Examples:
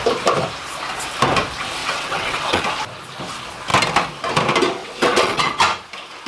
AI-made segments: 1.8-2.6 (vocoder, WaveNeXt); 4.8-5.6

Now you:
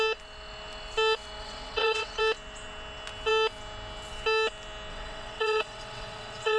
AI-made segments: 1.4-2.2 (vocoder, WaveNeXt); 4.9-6.6

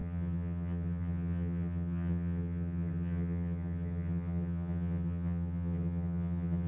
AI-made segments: 0.0-6.7 (vocoder, HiFi-GAN)